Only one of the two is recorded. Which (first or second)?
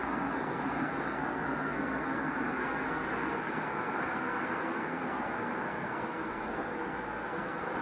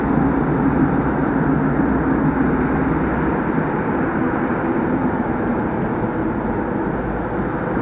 second